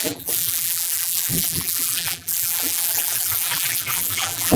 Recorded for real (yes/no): no